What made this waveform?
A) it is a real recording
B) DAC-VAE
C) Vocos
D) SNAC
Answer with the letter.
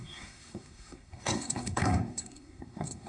D